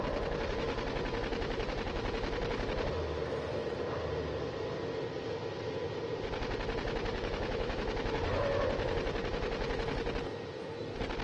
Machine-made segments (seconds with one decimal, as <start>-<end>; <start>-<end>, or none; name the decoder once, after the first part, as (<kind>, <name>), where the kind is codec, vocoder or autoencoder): 7.1-7.9 (autoencoder, DAC-VAE)